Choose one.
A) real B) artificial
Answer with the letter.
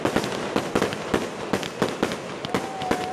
A